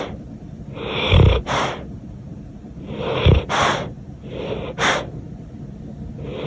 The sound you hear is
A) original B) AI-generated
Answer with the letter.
B